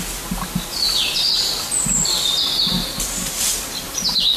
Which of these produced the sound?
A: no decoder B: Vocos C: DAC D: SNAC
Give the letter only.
A